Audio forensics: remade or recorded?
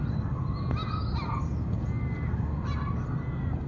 recorded